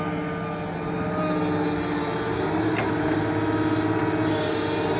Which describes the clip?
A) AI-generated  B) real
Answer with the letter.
B